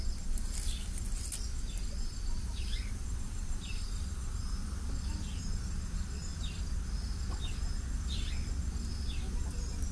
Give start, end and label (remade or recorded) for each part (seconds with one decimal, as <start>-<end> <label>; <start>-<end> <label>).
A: 0.0-2.4 recorded; 2.4-4.9 remade; 4.9-9.9 recorded